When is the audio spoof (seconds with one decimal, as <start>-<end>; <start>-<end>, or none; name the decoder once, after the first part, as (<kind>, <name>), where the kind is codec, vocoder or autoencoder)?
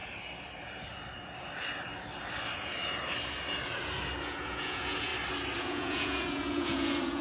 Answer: 4.2-5.1 (vocoder, Vocos); 5.6-7.2